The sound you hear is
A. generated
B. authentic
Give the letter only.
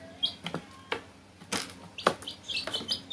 B